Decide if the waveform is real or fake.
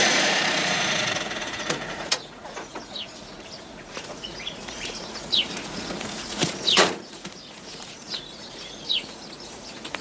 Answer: fake